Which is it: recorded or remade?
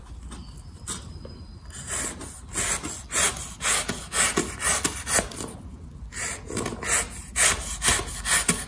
recorded